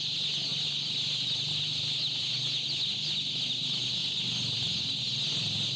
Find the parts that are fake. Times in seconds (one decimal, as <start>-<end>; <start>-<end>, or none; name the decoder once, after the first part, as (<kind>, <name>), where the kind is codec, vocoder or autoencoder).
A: none